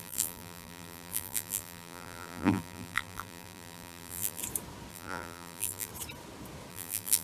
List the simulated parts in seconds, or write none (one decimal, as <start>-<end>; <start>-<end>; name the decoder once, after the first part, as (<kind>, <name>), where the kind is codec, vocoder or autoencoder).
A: 0.0-4.4 (vocoder, BigVGAN v2); 4.9-5.9; 6.7-7.2